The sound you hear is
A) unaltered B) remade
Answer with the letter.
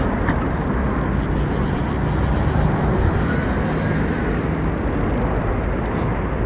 A